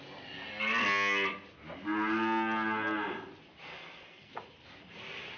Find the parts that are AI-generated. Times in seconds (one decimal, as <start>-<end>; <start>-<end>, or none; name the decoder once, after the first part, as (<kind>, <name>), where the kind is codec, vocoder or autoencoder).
3.7-4.3 (codec, SNAC)